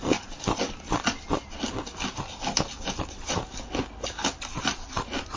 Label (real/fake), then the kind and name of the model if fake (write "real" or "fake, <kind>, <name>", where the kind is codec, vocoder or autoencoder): real